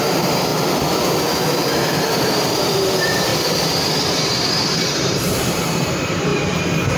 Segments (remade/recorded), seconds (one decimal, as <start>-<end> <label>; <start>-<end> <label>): 0.0-0.5 remade; 0.5-2.1 recorded; 2.1-3.3 remade; 3.3-4.5 recorded; 4.5-7.0 remade